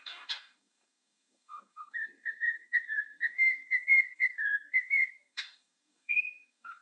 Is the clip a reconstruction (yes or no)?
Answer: yes